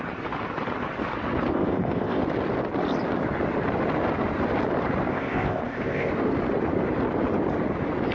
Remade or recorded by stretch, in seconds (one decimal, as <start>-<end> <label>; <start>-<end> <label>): 0.0-1.5 recorded; 1.5-2.2 remade; 2.2-5.1 recorded; 5.1-6.1 remade; 6.1-8.1 recorded

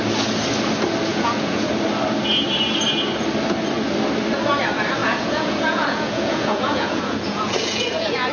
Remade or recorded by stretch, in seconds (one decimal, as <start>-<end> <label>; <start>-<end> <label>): 0.0-1.1 recorded; 1.1-1.7 remade; 1.7-5.0 recorded; 5.0-8.3 remade

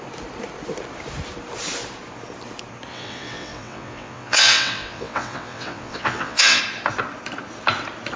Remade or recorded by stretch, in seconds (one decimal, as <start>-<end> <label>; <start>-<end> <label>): 0.0-2.9 recorded; 2.9-6.6 remade; 6.6-8.2 recorded

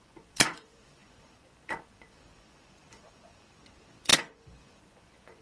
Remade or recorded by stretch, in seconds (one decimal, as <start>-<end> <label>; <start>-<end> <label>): 0.0-5.4 remade

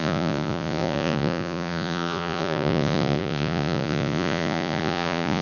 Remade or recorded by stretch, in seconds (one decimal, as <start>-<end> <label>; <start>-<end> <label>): 0.0-5.4 remade

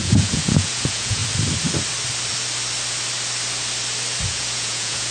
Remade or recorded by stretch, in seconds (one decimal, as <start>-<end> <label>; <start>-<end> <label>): 0.0-1.2 remade; 1.2-4.3 recorded; 4.3-5.1 remade